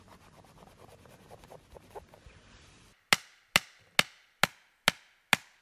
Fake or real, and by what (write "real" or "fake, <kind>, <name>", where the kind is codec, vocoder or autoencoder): real